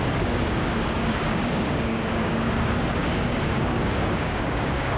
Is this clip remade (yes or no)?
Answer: yes